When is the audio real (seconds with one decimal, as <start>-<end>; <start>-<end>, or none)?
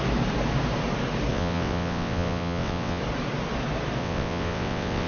0.0-1.3; 3.0-4.0